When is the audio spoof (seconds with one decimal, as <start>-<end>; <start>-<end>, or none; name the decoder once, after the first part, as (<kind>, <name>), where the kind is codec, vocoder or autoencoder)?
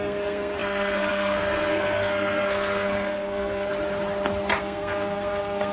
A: 0.0-3.7 (codec, SNAC); 4.6-5.7